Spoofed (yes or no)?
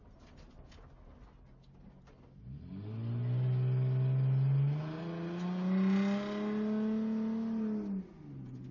no